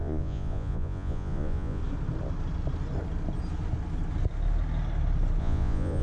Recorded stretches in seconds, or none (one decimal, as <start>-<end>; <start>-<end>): 1.8-5.4